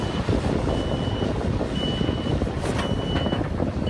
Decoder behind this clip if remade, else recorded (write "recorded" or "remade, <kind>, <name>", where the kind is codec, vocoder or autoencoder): recorded